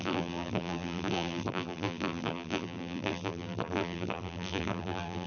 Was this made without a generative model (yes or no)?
no